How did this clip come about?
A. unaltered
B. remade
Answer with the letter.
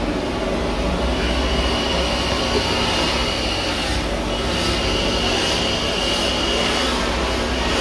A